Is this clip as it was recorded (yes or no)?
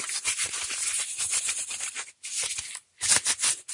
yes